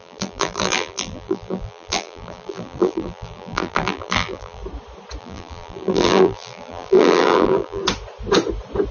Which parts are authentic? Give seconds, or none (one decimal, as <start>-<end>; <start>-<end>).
4.6-5.2; 7.8-8.9